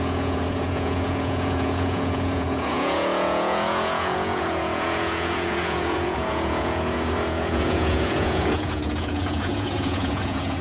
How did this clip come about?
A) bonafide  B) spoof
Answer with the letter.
B